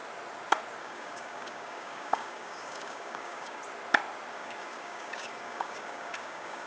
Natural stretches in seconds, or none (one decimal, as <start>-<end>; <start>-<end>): 0.0-0.8; 3.6-4.3